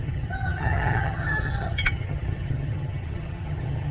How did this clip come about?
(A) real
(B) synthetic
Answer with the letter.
B